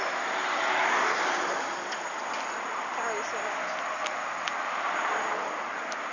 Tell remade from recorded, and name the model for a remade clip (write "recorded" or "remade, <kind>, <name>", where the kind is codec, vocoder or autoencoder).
recorded